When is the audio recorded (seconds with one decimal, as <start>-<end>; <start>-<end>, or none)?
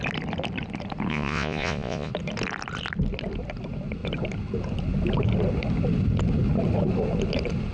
0.0-1.1; 2.1-7.7